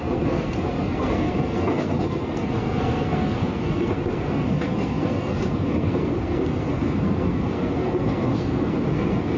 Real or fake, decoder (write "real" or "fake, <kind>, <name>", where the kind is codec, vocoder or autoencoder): fake, codec, SNAC